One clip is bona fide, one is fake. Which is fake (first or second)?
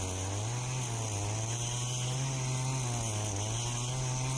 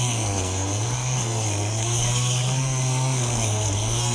second